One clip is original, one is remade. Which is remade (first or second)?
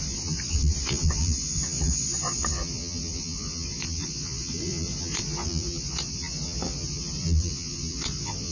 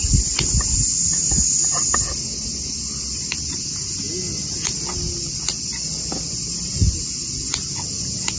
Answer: first